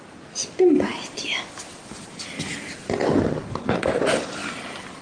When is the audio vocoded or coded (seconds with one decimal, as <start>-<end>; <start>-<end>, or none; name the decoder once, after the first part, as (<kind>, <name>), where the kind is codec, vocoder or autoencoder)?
none